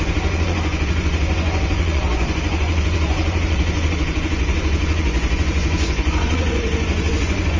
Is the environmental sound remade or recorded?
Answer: remade